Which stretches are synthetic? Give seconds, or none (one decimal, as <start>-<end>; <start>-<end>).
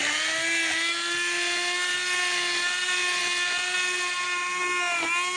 none